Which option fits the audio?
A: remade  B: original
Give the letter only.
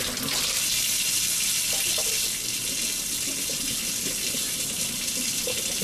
B